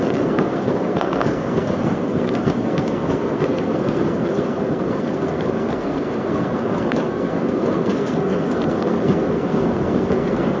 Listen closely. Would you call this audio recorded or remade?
remade